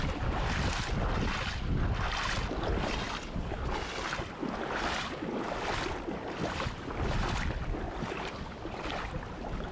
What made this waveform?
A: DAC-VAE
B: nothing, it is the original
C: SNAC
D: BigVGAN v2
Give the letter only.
B